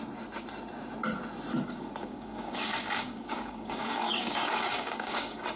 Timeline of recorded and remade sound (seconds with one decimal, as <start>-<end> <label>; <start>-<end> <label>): 0.0-2.0 recorded; 2.0-5.6 remade

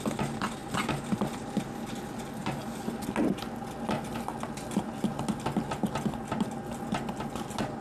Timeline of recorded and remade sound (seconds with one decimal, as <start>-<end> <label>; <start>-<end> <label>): 0.0-7.8 recorded